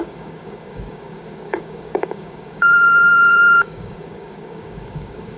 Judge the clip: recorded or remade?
remade